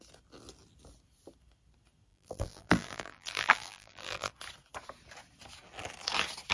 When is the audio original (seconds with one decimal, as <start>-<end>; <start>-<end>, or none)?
0.0-2.1; 4.3-6.5